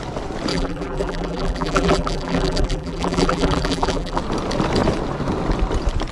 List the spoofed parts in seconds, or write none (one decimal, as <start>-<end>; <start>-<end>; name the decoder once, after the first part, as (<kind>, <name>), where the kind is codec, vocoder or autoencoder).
0.5-4.2 (vocoder, BigVGAN v2)